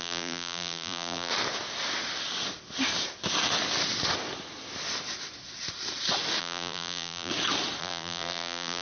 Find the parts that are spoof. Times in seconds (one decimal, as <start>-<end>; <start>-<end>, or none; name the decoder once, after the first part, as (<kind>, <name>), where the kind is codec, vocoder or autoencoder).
0.0-1.3 (vocoder, BigVGAN v2); 6.4-7.3; 7.8-8.8